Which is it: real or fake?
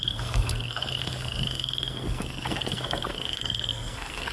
fake